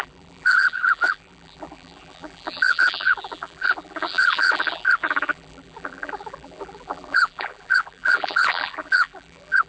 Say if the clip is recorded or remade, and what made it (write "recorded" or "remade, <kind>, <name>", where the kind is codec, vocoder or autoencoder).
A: remade, vocoder, BigVGAN v2